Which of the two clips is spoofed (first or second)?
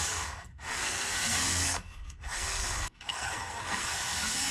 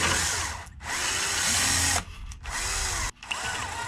first